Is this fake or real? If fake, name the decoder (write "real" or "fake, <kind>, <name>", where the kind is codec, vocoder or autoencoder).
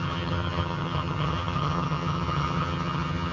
fake, vocoder, HiFi-GAN